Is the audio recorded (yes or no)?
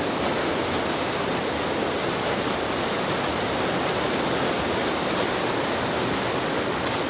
yes